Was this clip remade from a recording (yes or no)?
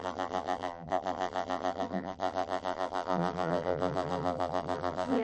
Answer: yes